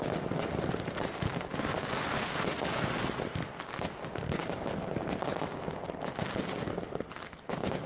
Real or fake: real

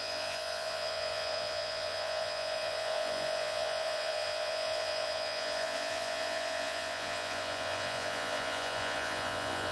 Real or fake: fake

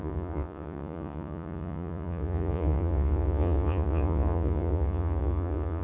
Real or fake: fake